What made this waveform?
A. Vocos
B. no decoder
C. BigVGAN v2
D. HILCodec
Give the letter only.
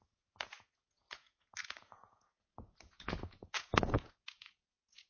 A